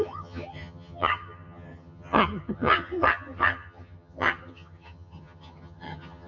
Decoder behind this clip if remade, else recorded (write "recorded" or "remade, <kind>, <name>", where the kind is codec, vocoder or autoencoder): remade, vocoder, HiFi-GAN